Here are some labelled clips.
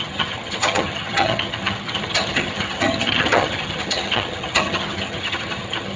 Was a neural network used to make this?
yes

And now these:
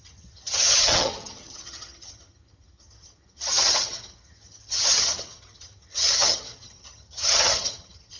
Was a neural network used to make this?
yes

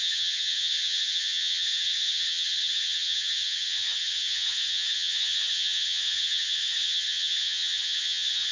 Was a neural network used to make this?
yes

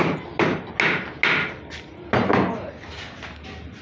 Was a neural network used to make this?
no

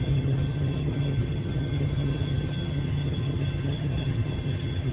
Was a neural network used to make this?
yes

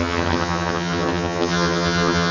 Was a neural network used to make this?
yes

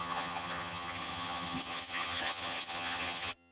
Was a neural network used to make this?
yes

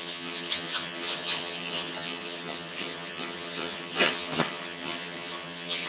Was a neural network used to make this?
yes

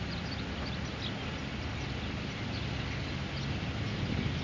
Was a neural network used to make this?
no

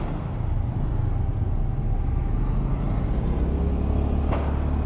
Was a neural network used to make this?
no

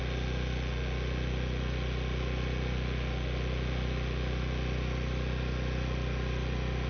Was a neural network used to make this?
no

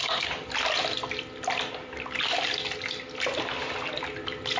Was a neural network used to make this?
no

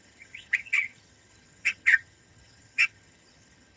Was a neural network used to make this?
yes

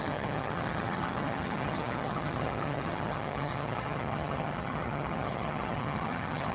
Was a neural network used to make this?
yes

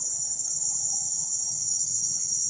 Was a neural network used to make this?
yes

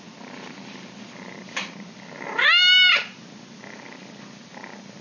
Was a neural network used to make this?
no